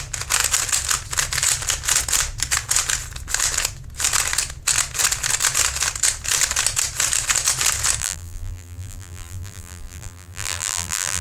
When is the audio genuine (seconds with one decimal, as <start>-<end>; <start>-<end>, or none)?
0.0-8.0